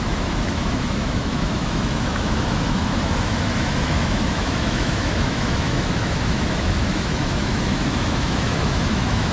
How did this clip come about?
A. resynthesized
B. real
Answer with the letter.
A